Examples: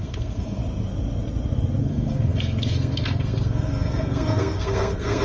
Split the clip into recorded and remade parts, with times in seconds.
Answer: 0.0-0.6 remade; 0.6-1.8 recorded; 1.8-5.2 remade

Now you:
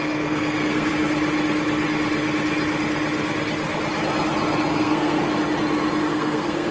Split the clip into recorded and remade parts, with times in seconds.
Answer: 0.0-0.9 remade; 0.9-4.7 recorded; 4.7-5.2 remade; 5.2-6.0 recorded; 6.0-6.7 remade

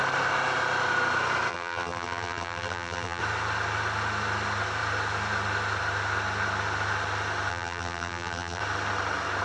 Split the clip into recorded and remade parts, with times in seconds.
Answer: 0.0-1.5 recorded; 1.5-3.2 remade; 3.2-7.5 recorded; 7.5-8.6 remade; 8.6-9.4 recorded

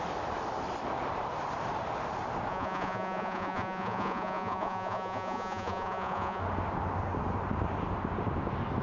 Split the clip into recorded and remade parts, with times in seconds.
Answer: 0.0-2.5 recorded; 2.5-6.4 remade; 6.4-8.8 recorded

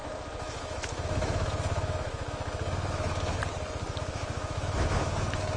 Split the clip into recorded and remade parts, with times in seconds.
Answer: 0.0-3.4 remade; 3.4-4.0 recorded; 4.0-5.6 remade